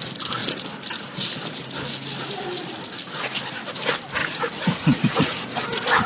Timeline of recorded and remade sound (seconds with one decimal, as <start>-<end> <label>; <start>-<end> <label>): 0.0-4.2 recorded; 4.2-5.4 remade; 5.4-6.1 recorded